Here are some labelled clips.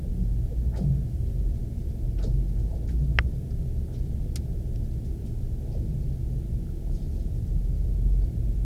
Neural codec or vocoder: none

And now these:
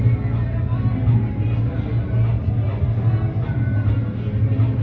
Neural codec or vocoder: none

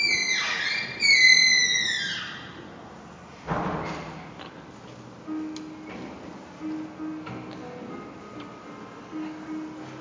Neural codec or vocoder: none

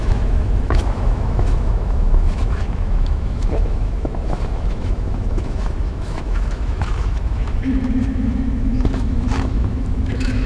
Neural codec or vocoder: autoencoder, DAC-VAE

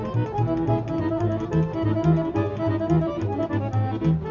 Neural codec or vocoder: none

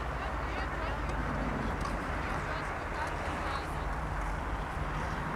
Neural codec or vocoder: none